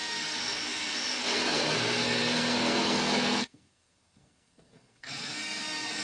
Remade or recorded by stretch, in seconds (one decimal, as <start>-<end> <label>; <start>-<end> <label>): 0.0-6.0 remade